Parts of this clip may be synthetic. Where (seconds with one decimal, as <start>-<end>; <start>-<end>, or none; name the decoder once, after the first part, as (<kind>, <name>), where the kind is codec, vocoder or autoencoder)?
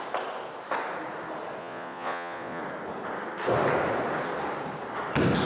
1.6-2.6 (vocoder, Vocos)